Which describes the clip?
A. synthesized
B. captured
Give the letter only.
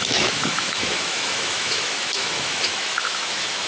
A